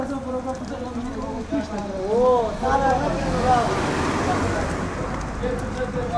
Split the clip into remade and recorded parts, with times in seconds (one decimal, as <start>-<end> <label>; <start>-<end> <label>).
0.0-6.2 recorded